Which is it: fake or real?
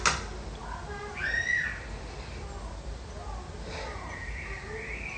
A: real